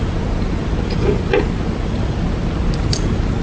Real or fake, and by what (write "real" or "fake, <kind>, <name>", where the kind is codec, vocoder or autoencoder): real